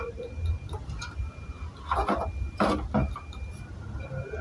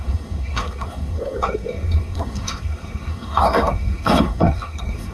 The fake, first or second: second